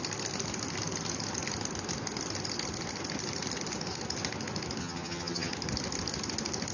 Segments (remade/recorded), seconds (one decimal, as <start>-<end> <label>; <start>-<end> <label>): 0.0-4.8 recorded; 4.8-5.5 remade; 5.5-6.7 recorded